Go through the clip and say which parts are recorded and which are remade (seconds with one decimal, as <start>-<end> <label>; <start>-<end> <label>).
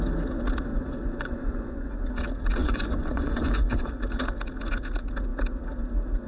0.0-0.7 recorded; 0.7-2.0 remade; 2.0-2.6 recorded; 2.6-3.9 remade; 3.9-6.3 recorded